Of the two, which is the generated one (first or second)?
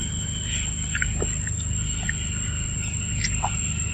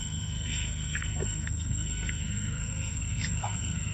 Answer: second